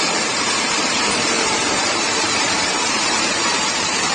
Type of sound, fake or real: fake